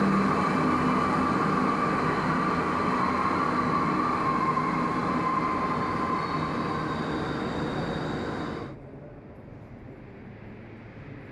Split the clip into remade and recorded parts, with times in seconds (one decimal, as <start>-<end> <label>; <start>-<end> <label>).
0.0-11.3 recorded